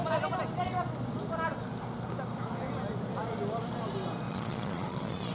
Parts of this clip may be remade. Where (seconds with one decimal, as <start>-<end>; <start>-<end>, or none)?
4.3-5.3